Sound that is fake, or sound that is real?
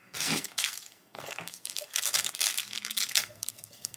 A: fake